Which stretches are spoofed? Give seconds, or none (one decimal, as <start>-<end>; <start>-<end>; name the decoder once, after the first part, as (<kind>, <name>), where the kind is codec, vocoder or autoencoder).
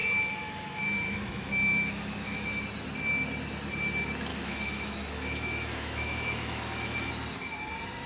0.0-2.6 (autoencoder, DAC-VAE); 4.3-7.1